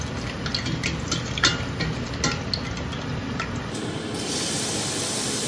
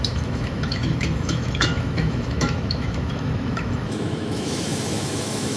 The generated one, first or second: second